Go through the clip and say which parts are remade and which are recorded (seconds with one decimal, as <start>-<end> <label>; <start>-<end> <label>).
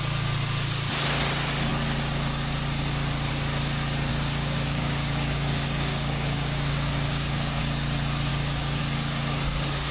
0.0-4.1 recorded; 4.1-7.6 remade; 7.6-8.3 recorded; 8.3-8.8 remade; 8.8-9.9 recorded